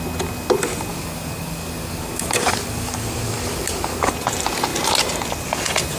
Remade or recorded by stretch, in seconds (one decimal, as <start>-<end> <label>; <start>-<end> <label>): 0.0-0.9 recorded; 0.9-4.1 remade; 4.1-6.0 recorded